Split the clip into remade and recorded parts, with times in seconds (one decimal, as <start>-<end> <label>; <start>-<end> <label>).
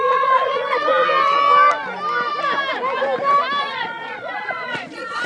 0.0-1.1 remade; 1.1-3.6 recorded; 3.6-5.3 remade